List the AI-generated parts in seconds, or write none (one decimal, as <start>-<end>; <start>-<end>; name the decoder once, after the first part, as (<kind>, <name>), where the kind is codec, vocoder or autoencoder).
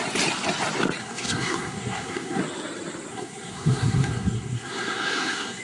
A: 1.0-2.4 (codec, SNAC); 3.1-5.6